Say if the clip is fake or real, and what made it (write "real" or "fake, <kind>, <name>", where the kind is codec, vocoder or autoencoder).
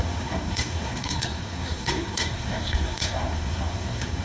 fake, codec, SNAC